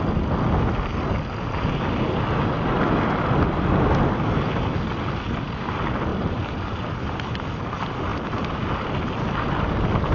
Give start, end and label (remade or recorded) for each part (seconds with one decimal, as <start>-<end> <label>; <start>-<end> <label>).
0.0-6.1 recorded; 6.1-7.2 remade; 7.2-10.1 recorded